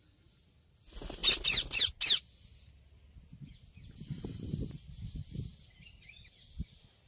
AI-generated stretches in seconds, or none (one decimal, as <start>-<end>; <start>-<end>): none